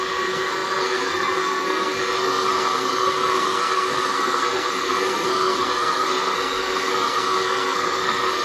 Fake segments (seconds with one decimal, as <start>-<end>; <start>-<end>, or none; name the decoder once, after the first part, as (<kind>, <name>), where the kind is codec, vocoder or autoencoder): 0.0-8.4 (codec, SNAC)